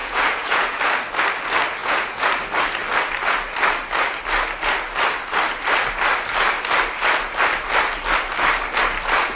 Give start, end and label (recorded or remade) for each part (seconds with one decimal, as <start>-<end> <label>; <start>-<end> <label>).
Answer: 0.0-0.8 remade; 0.8-1.8 recorded; 1.8-2.3 remade; 2.3-9.4 recorded